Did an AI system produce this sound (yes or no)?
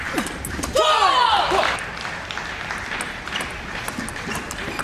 no